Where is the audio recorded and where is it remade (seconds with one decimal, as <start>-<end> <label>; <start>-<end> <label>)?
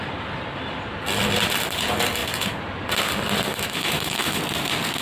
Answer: 0.0-3.5 recorded; 3.5-4.4 remade; 4.4-5.0 recorded